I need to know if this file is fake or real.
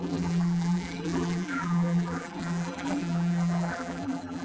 fake